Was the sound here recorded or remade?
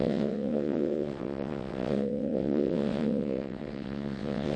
remade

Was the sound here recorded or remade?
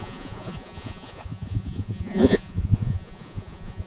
remade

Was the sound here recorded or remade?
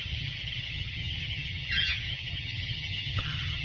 remade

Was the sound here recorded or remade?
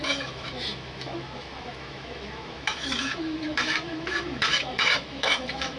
remade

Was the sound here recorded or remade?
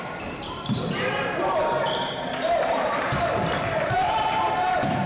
remade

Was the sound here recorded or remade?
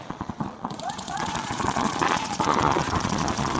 remade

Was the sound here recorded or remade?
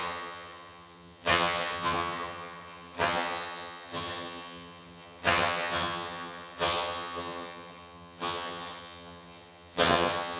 remade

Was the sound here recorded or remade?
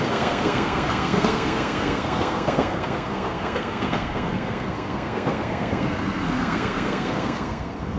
remade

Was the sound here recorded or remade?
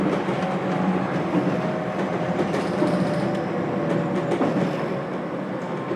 recorded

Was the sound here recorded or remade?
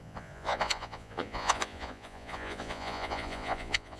remade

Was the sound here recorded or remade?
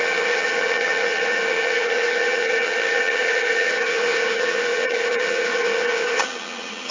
remade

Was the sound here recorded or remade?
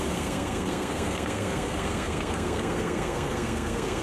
remade